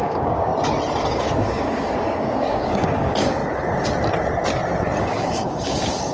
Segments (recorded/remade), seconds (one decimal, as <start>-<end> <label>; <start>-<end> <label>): 0.0-0.5 remade; 0.5-1.1 recorded; 1.1-3.4 remade; 3.4-5.0 recorded; 5.0-6.1 remade